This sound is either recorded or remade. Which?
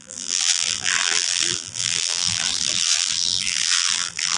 remade